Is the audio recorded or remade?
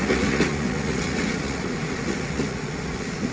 remade